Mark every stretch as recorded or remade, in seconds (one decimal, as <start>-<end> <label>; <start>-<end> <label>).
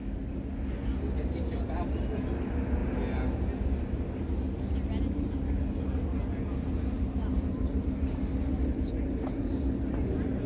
0.0-10.5 recorded